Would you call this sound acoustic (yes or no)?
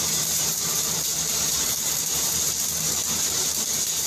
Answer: no